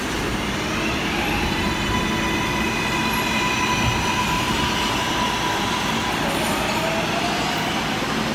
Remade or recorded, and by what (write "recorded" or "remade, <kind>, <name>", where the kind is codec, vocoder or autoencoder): recorded